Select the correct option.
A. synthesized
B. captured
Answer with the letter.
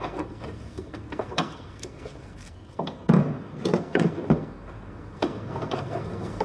A